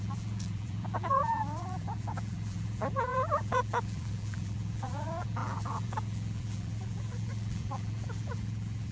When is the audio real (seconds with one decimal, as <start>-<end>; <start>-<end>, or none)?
none